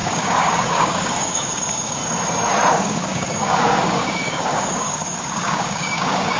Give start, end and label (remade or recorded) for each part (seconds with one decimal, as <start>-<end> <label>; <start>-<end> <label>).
0.0-2.0 remade; 2.0-2.7 recorded; 2.7-6.4 remade